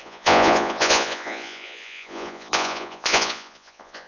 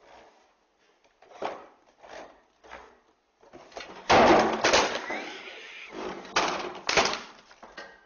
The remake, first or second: first